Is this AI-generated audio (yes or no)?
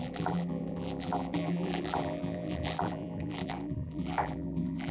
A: yes